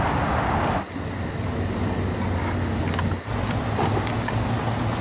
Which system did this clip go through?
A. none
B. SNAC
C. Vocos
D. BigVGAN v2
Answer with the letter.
A